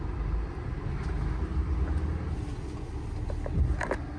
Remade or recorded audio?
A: recorded